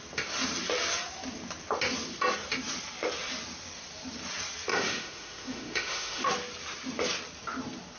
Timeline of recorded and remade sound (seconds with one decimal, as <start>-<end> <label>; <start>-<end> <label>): 0.0-4.7 recorded; 4.7-6.3 remade; 6.3-8.0 recorded